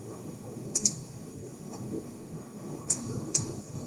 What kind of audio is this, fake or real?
fake